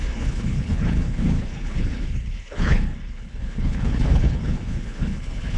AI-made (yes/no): yes